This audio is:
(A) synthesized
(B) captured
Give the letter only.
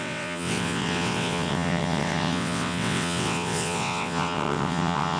A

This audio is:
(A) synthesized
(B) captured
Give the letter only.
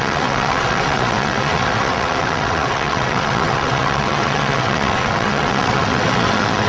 A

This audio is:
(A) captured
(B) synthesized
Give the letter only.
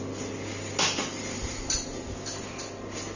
A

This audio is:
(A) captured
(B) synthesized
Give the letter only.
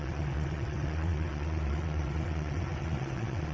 B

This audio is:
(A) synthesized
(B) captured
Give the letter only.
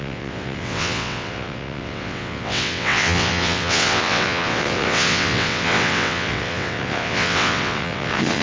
A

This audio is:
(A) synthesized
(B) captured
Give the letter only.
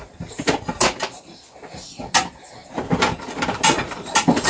B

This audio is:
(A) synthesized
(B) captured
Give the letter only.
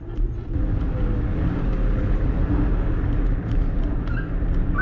B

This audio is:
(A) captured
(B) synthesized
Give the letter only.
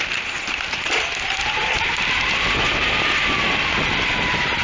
A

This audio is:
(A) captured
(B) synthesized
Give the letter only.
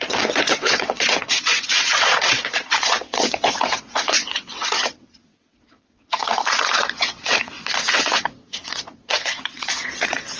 B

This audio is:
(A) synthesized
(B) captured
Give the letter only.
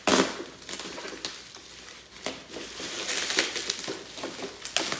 B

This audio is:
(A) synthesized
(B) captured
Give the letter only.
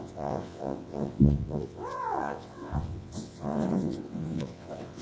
A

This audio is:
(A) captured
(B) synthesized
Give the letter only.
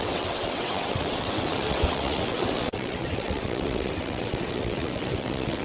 B